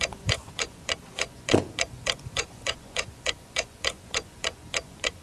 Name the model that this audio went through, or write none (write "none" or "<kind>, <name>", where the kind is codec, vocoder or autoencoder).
vocoder, Vocos